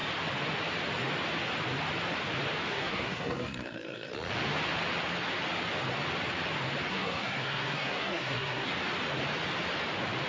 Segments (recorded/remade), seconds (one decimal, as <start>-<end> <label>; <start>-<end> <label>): 0.0-2.7 recorded; 2.7-4.1 remade; 4.1-6.9 recorded; 6.9-8.7 remade; 8.7-10.3 recorded